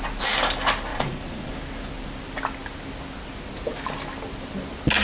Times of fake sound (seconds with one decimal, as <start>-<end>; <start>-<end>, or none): 0.9-1.5